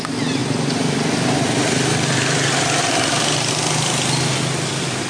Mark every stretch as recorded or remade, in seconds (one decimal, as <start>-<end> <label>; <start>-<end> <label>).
0.0-5.1 recorded